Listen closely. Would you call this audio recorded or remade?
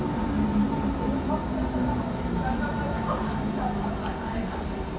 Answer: recorded